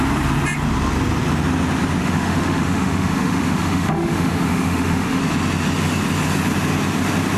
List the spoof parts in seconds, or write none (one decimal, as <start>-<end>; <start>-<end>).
2.0-5.2